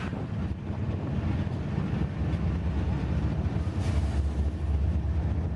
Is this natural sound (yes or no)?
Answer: yes